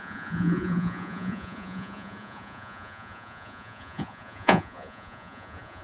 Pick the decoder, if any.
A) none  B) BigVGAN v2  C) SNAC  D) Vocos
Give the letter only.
D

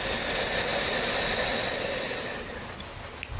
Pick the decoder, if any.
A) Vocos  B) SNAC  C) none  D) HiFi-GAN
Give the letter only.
C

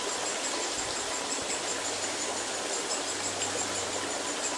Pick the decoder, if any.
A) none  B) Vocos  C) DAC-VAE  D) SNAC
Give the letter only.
A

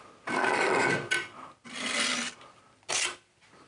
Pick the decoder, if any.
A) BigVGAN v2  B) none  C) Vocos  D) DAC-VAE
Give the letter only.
B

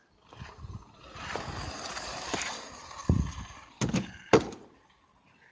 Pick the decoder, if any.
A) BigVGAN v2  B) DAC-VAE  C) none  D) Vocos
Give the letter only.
C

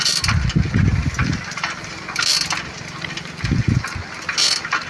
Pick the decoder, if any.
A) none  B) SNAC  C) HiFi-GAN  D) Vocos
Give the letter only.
A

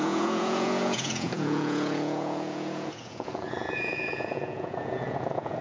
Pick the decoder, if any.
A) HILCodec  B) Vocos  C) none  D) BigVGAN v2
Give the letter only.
B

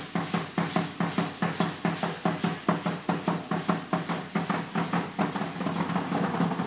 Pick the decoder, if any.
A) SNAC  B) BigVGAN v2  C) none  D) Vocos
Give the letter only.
C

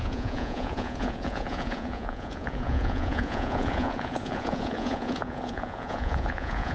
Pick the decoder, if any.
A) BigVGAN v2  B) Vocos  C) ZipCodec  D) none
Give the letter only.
B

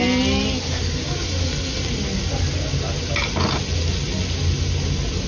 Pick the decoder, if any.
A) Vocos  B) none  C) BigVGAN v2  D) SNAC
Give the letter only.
B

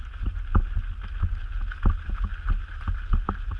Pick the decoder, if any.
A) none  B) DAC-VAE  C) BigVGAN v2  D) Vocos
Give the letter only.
A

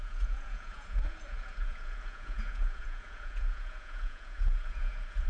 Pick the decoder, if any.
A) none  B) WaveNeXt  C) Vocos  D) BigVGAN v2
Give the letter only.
C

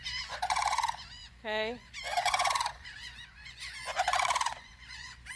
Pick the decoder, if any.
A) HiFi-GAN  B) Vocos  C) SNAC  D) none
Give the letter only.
B